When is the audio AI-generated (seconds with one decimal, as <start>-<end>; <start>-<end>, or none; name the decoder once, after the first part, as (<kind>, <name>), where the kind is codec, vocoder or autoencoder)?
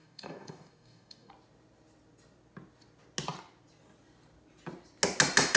0.0-1.3 (codec, DAC)